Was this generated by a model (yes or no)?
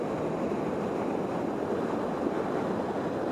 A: no